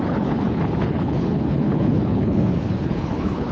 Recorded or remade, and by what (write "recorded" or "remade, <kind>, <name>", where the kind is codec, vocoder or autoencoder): remade, codec, HILCodec